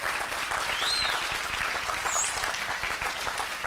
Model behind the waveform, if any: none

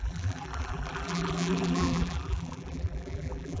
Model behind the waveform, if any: vocoder, BigVGAN v2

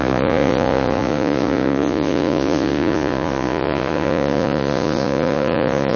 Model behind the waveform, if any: vocoder, Vocos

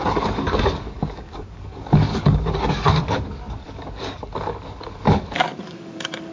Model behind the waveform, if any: codec, DAC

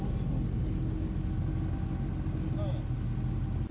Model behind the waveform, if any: none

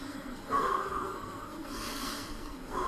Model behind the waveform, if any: codec, SNAC